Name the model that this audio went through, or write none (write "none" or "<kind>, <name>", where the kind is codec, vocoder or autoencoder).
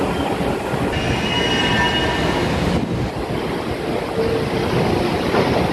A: none